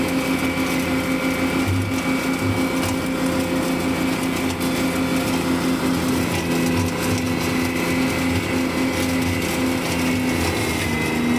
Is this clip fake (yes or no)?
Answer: no